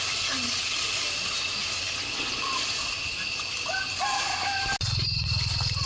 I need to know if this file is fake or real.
real